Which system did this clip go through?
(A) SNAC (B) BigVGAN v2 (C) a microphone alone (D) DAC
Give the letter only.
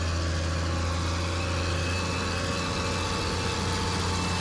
C